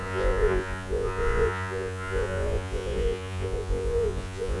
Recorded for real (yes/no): no